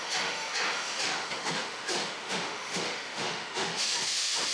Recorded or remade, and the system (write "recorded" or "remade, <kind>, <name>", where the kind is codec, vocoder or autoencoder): remade, autoencoder, DAC-VAE